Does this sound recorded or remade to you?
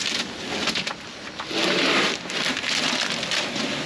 recorded